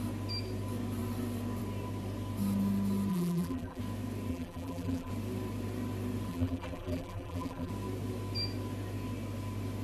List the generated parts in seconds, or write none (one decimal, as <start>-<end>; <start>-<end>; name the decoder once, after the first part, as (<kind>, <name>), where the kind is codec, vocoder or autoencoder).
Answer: 3.1-3.8 (vocoder, BigVGAN v2); 4.3-5.1; 6.3-7.7